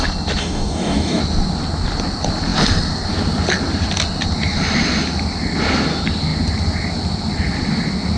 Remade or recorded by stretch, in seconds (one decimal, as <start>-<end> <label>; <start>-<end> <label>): 0.0-0.4 recorded; 0.4-1.2 remade; 1.2-8.2 recorded